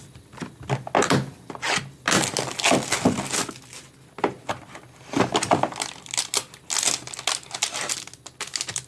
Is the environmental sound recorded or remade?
recorded